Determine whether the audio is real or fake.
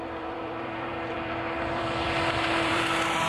fake